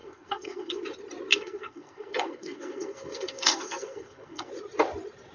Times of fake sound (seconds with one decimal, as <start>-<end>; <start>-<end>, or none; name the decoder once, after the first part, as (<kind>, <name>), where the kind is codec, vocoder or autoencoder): 0.0-0.8 (codec, SNAC); 1.3-4.5